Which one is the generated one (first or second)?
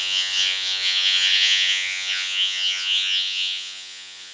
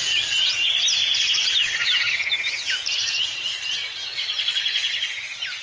first